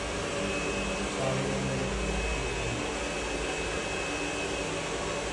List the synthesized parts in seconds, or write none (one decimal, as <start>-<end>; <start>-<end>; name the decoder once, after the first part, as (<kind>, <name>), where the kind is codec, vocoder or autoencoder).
none